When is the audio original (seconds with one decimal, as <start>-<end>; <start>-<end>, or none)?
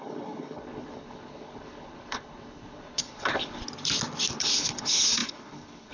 3.6-4.4